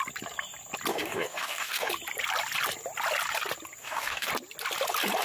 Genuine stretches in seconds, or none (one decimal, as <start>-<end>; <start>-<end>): 0.0-0.9; 1.9-3.8; 4.3-5.2